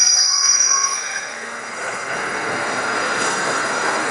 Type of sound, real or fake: fake